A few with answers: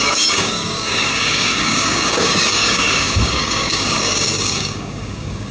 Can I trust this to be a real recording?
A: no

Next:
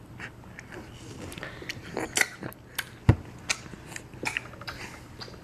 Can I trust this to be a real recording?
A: yes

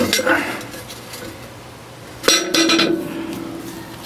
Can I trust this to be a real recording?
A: yes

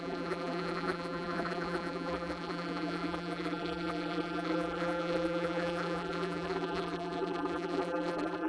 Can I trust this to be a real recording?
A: no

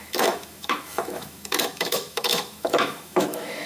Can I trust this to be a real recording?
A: no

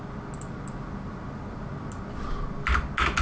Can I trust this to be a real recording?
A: yes